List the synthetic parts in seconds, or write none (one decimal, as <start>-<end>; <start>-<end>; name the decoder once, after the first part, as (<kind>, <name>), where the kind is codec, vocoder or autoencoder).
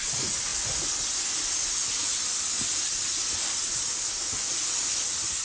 none